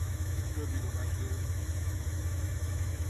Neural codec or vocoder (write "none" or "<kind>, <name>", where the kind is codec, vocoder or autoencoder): autoencoder, DAC-VAE